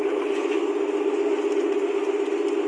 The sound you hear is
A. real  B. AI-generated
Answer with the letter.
A